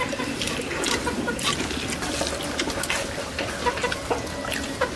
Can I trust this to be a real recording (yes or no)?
yes